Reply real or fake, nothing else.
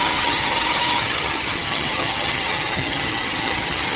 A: fake